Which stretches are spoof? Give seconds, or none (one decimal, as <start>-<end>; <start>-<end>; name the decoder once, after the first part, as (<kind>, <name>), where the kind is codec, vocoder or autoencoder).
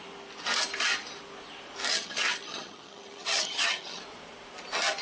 1.9-4.0 (vocoder, HiFi-GAN)